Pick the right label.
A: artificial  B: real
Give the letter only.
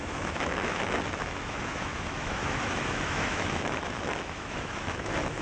A